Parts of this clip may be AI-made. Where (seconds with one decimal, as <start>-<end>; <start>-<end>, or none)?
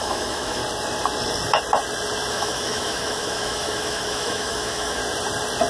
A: 0.0-0.6; 2.3-5.0